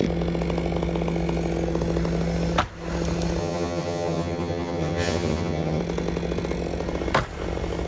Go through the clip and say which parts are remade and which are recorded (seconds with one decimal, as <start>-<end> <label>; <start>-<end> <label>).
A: 0.0-3.4 recorded; 3.4-5.8 remade; 5.8-7.9 recorded